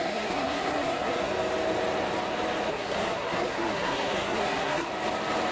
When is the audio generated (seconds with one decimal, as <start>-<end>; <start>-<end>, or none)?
0.0-1.3; 2.7-4.9